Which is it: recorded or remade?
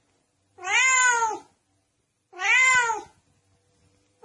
recorded